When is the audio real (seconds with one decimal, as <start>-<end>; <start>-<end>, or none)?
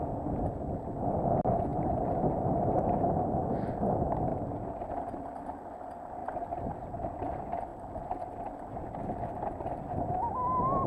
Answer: 0.0-10.9